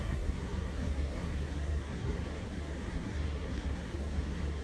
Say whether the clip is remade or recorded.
remade